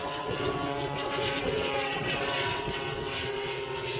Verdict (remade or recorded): remade